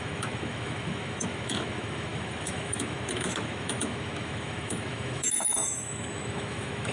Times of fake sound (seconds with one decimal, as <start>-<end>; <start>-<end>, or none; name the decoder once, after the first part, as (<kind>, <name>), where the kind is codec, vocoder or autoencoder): 0.0-6.9 (autoencoder, DAC-VAE)